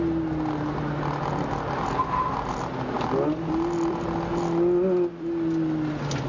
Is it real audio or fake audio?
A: real